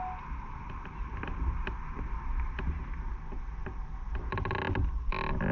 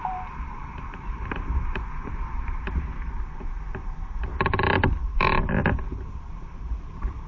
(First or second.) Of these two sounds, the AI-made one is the second